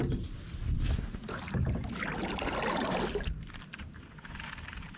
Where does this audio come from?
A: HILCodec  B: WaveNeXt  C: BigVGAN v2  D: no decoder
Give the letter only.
D